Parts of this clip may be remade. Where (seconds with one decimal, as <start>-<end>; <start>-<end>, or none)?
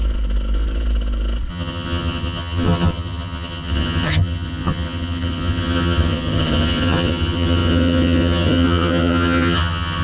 1.5-10.0